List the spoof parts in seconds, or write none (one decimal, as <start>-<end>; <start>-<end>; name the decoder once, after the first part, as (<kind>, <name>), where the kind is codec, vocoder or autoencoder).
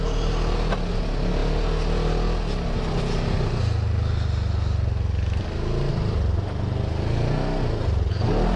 none